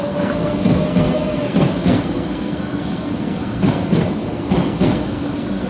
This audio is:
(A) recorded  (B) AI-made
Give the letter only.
B